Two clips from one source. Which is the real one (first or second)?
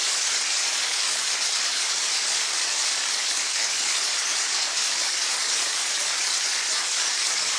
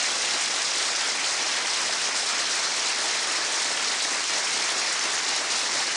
second